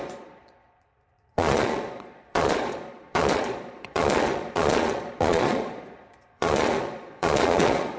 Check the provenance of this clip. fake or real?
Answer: fake